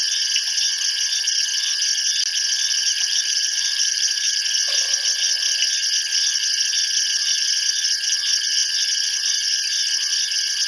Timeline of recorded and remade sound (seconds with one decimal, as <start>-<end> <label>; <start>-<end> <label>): 0.0-2.8 recorded; 2.8-4.4 remade; 4.4-10.7 recorded